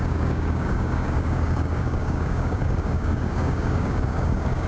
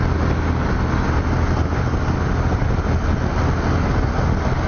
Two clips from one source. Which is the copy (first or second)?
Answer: first